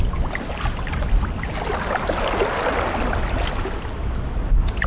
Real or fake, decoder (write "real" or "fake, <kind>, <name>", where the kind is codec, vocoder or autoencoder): real